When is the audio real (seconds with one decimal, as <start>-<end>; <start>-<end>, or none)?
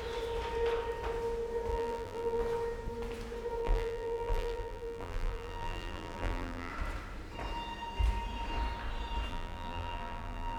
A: 0.0-1.7; 2.4-3.6; 6.7-9.3